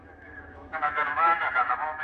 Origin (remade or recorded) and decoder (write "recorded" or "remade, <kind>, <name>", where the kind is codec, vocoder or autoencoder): remade, autoencoder, DAC-VAE